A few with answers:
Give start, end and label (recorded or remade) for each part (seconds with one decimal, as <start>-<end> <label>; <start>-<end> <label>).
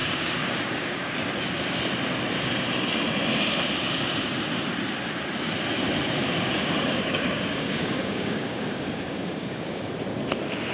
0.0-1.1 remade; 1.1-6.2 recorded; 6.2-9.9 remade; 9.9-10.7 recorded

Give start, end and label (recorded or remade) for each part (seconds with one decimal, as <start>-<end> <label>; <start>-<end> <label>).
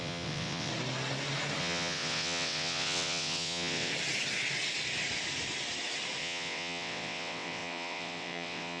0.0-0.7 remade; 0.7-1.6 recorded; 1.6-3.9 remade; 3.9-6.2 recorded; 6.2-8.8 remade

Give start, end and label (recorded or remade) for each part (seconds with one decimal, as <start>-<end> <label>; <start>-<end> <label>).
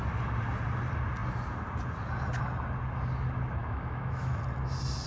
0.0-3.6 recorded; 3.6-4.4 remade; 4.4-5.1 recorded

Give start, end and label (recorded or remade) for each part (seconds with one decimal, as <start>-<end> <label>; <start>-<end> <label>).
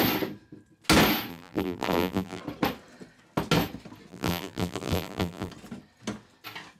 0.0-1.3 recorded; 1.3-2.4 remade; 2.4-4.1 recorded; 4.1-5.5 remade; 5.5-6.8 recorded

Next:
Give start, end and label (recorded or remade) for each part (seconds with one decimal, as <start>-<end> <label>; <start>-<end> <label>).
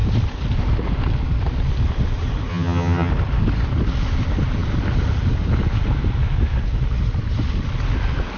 0.0-2.5 recorded; 2.5-3.1 remade; 3.1-8.4 recorded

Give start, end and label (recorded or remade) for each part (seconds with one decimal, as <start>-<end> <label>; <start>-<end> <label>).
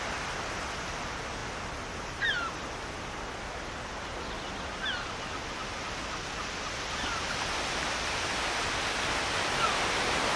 0.0-10.4 recorded